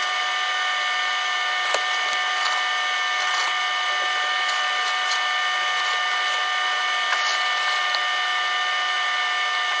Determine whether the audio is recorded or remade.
recorded